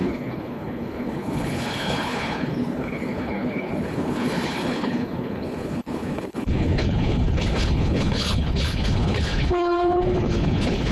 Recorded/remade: remade